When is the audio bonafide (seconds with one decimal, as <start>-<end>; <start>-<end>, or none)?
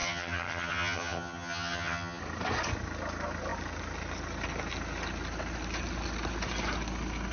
2.2-7.3